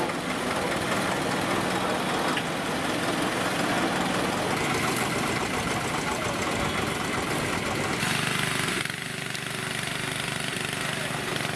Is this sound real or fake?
real